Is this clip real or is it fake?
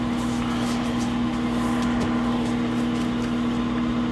real